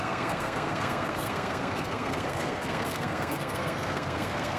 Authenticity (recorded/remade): remade